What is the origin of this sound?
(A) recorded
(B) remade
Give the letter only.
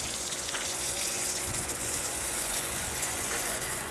B